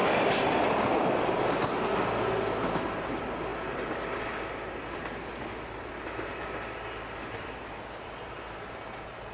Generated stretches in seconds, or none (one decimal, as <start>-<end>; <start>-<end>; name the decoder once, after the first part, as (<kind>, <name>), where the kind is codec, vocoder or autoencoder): none